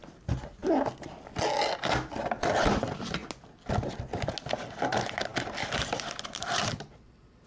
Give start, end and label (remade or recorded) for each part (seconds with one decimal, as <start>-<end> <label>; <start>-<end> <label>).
0.0-7.5 recorded